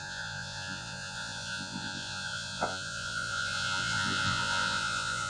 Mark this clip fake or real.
fake